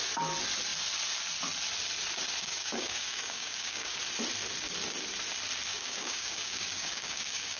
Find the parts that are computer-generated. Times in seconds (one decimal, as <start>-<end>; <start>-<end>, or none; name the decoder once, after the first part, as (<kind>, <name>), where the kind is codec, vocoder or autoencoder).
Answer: 2.4-4.0 (codec, DAC); 5.7-7.6